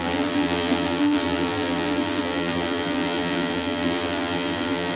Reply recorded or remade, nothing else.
remade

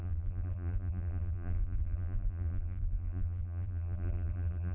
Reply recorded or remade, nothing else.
remade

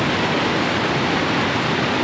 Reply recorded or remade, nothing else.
recorded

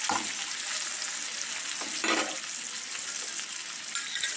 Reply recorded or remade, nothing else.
recorded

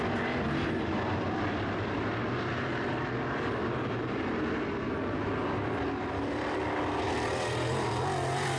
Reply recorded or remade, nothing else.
remade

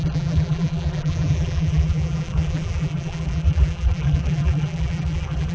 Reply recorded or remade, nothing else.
remade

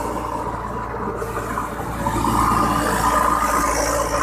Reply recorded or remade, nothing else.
recorded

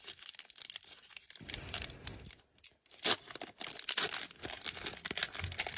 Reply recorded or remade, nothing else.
recorded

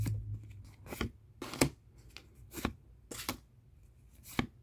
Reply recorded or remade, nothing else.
recorded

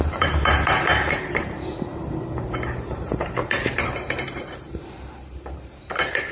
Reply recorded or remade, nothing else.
remade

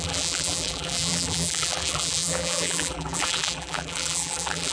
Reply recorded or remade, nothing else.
remade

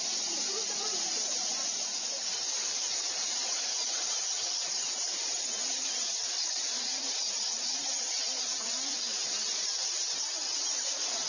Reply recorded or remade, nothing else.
remade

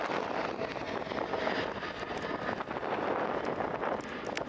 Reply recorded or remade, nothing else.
recorded